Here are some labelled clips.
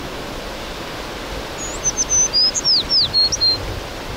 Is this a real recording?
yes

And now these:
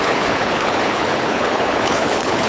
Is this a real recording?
no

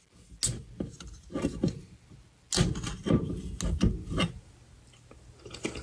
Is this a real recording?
yes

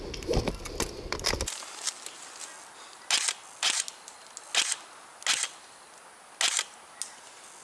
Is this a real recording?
yes